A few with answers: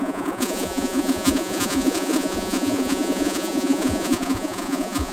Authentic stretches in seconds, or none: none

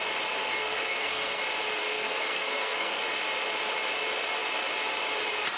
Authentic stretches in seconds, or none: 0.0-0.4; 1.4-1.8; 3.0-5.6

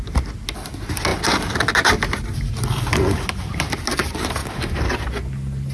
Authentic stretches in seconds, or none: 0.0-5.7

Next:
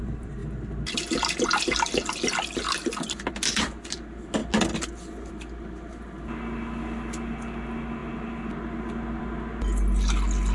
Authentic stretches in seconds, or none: 0.0-10.5

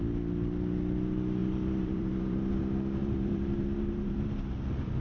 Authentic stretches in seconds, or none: 0.0-1.4; 2.6-3.0; 4.5-5.0

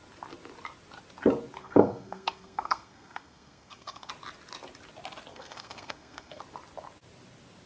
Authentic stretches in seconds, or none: 0.0-1.6; 4.1-5.3; 6.4-7.7